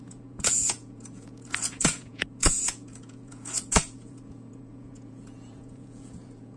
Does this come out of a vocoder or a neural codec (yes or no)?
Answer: yes